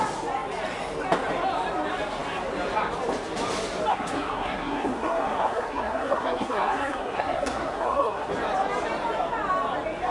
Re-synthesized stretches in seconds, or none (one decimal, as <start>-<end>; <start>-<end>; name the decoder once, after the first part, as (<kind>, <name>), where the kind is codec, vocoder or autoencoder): 3.9-8.3 (codec, SNAC)